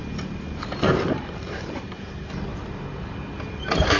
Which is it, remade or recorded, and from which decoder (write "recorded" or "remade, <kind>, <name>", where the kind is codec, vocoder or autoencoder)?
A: recorded